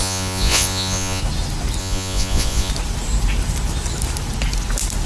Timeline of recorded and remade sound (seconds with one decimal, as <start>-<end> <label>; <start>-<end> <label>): 0.0-1.2 remade; 1.2-1.8 recorded; 1.8-2.7 remade; 2.7-5.1 recorded